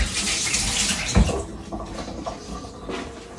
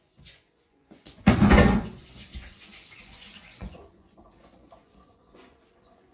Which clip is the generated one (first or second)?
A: second